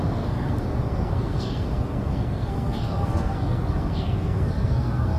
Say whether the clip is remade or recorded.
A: remade